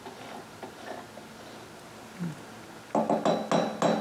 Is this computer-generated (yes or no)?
no